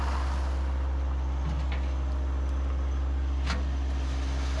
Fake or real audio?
real